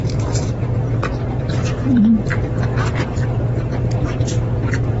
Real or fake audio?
fake